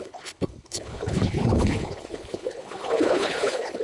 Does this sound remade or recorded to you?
remade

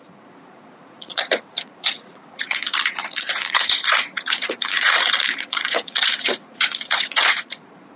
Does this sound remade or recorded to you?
remade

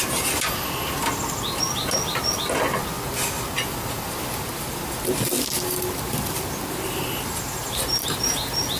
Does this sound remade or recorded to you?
recorded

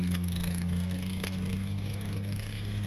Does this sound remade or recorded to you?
remade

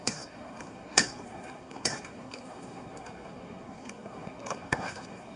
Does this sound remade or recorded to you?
remade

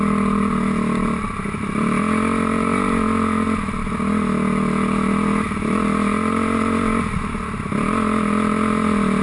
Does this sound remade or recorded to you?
recorded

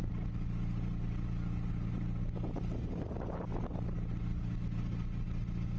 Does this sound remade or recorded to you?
recorded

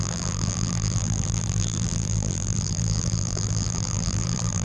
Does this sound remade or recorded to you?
remade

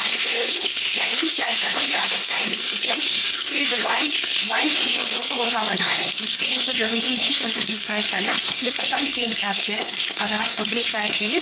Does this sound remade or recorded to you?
remade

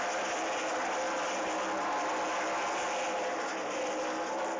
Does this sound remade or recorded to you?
recorded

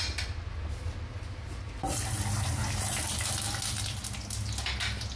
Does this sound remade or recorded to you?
recorded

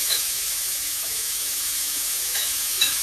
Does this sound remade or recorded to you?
remade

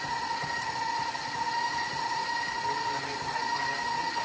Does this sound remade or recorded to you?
recorded